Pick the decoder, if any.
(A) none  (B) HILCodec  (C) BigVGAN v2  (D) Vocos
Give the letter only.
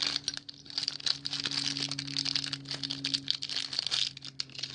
A